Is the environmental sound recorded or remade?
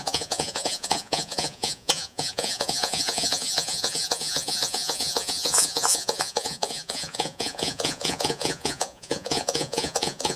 remade